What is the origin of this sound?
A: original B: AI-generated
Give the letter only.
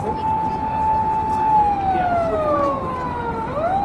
A